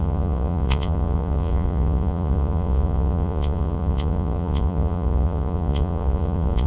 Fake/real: fake